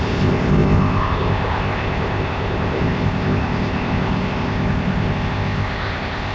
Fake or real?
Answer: fake